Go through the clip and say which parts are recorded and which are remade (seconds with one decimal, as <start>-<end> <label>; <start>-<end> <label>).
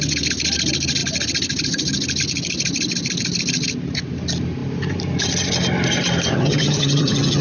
0.0-6.3 recorded; 6.3-7.4 remade